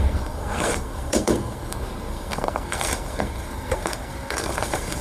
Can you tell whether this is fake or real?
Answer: fake